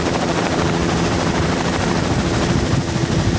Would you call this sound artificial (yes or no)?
yes